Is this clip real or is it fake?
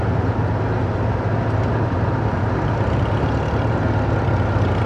real